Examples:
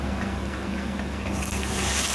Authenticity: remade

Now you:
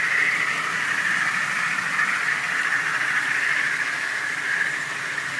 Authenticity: recorded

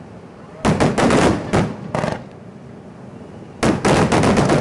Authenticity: recorded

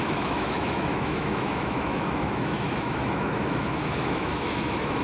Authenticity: remade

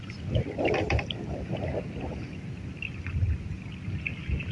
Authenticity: recorded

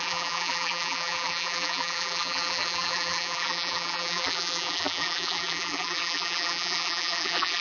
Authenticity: remade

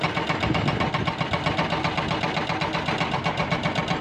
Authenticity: recorded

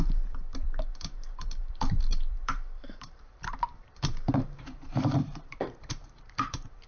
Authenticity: remade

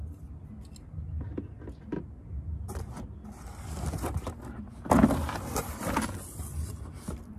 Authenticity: recorded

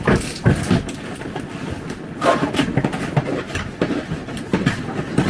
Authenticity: recorded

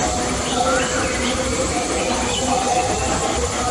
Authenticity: recorded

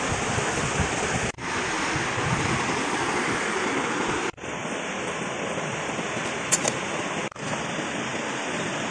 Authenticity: recorded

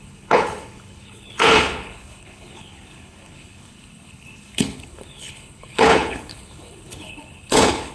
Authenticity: remade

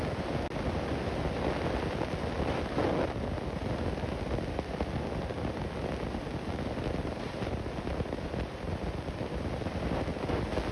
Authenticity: recorded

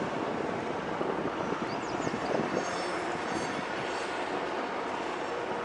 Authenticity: recorded